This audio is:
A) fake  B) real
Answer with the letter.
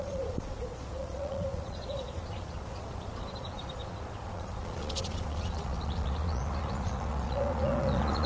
A